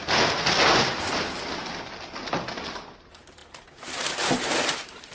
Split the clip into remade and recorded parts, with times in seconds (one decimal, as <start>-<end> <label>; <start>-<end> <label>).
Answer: 0.0-5.1 recorded